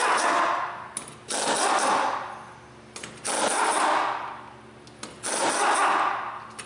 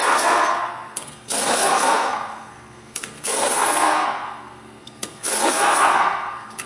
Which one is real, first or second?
first